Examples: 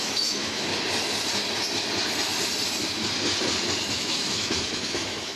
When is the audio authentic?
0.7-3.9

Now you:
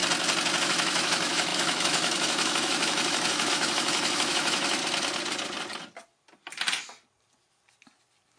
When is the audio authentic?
0.0-0.6; 4.8-8.4